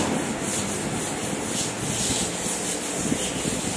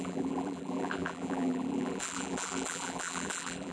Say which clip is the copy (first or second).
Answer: second